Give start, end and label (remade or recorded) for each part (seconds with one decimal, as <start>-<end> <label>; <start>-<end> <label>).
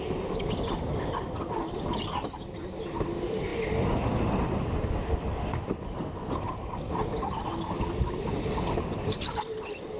0.0-10.0 recorded